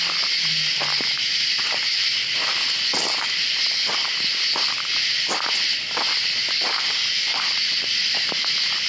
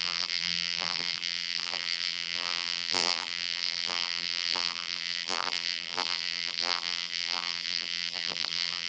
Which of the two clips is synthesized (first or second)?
second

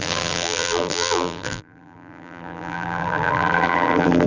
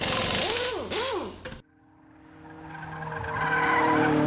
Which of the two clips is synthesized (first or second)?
first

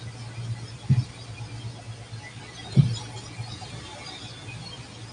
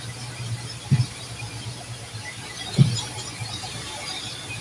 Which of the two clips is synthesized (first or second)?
second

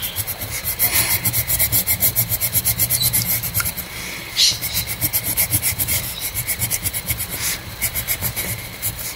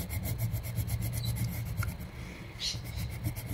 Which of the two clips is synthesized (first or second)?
first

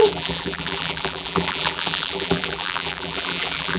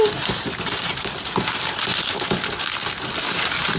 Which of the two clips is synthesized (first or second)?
first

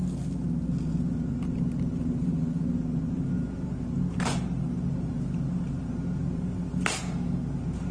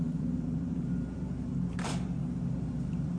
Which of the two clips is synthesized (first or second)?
second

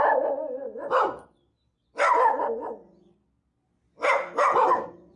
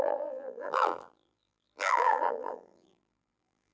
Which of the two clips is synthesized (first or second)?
second